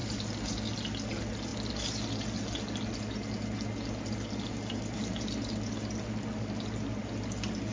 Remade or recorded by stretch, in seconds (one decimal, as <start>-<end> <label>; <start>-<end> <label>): 0.0-7.7 recorded